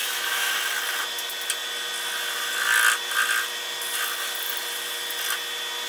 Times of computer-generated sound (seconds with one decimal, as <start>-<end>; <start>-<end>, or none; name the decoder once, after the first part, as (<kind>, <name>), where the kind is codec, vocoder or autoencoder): 0.0-0.5 (autoencoder, DAC-VAE)